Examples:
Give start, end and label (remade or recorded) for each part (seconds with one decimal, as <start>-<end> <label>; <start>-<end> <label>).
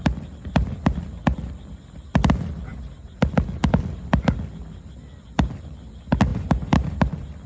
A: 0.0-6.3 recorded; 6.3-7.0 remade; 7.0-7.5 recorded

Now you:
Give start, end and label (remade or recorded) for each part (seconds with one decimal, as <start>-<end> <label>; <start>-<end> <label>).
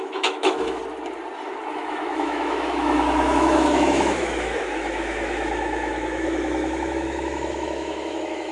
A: 0.0-0.8 remade; 0.8-1.7 recorded; 1.7-8.5 remade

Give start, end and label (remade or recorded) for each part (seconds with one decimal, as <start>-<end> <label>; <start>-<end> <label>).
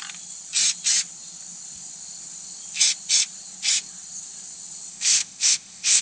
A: 0.0-4.9 recorded; 4.9-6.0 remade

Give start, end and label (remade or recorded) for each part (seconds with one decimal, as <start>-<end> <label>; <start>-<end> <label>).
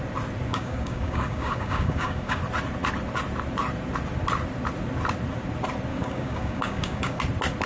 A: 0.0-0.5 recorded; 0.5-2.4 remade; 2.4-5.9 recorded; 5.9-7.2 remade; 7.2-7.7 recorded